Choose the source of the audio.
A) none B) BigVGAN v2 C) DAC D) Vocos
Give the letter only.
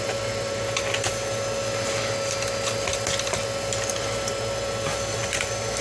A